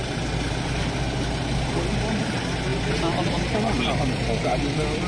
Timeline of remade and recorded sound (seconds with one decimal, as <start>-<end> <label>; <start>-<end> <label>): 0.0-5.1 recorded